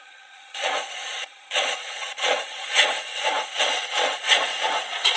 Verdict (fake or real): fake